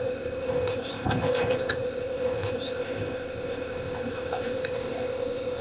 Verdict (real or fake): fake